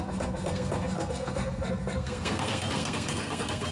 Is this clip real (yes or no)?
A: no